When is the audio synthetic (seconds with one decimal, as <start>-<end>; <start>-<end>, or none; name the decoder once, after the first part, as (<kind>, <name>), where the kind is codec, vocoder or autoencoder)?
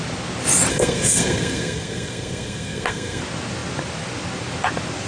0.7-3.2 (codec, SNAC)